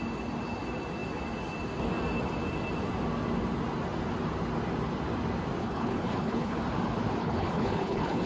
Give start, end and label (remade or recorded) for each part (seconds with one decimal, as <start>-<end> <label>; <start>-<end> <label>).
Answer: 0.0-5.6 recorded; 5.6-6.6 remade; 6.6-7.2 recorded; 7.2-8.3 remade